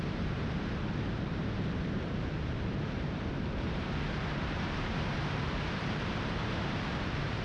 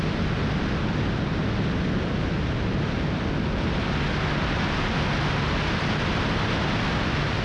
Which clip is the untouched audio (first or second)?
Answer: second